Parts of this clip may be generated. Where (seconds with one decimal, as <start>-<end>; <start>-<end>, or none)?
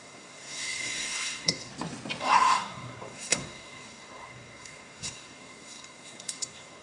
0.0-1.7; 2.2-6.8